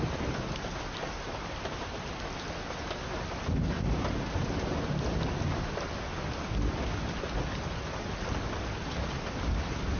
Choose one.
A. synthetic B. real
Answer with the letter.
B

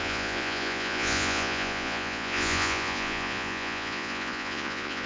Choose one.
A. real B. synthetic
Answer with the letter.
B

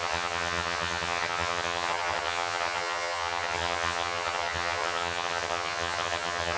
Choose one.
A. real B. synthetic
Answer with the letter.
B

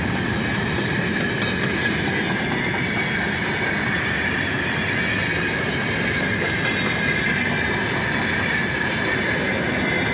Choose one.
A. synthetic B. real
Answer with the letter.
B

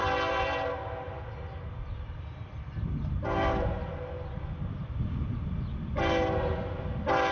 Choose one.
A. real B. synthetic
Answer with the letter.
A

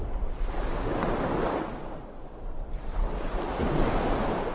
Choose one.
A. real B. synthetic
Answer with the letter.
A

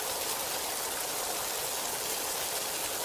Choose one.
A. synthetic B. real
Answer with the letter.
B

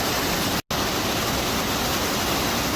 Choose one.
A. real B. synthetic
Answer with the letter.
A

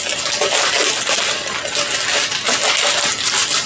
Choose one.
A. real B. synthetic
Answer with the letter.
A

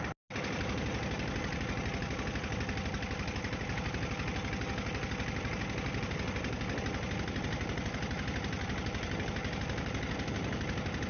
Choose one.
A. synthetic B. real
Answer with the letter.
B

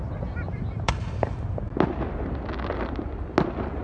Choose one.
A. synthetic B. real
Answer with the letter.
B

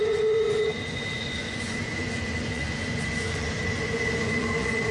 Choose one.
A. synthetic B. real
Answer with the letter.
A